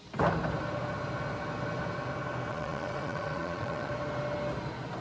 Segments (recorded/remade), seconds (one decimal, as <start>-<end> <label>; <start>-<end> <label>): 0.0-2.5 recorded; 2.5-3.9 remade; 3.9-5.0 recorded